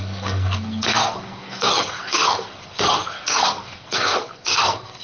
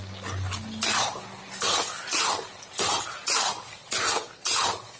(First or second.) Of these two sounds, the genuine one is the second